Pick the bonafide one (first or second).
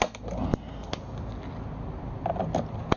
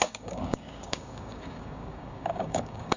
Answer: first